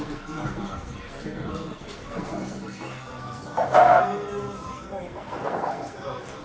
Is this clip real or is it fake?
fake